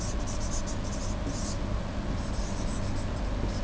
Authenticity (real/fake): real